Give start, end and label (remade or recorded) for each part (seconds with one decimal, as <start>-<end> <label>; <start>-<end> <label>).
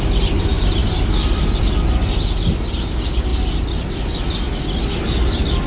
0.0-5.7 recorded